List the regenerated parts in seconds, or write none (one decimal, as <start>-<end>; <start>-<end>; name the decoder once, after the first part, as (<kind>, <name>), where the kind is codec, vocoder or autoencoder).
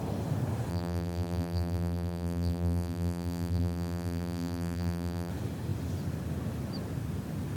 0.7-5.3 (vocoder, BigVGAN v2)